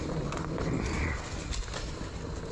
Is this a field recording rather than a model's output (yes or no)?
yes